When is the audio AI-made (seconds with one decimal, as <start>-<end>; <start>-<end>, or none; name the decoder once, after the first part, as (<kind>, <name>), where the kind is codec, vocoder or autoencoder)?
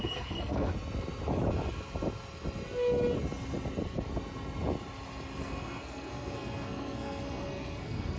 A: 0.0-0.7 (codec, SNAC); 5.4-8.2